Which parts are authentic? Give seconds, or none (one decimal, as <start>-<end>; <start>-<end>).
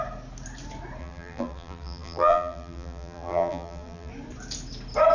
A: 0.0-1.0; 4.1-5.1